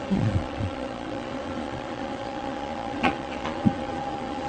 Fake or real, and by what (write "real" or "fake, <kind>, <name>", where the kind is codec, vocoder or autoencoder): fake, vocoder, Vocos